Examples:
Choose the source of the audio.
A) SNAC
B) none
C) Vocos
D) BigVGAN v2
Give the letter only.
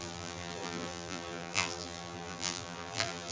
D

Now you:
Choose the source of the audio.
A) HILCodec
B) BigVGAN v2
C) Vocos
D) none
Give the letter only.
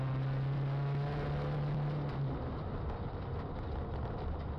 D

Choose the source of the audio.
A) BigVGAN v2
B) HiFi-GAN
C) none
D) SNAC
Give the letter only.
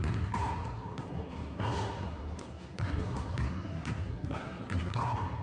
D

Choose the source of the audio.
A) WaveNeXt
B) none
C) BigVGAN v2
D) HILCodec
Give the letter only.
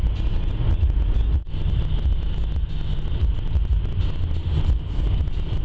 B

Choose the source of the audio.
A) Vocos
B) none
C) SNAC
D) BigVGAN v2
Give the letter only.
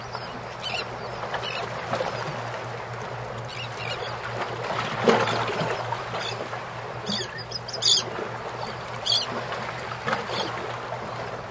B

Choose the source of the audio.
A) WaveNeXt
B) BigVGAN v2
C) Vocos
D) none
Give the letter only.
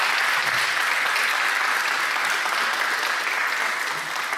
D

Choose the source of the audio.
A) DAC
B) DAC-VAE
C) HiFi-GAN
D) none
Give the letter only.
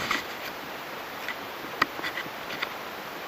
D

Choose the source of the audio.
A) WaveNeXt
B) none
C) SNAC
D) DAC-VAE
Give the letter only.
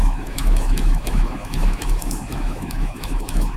D